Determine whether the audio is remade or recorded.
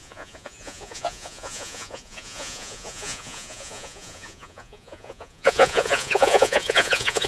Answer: remade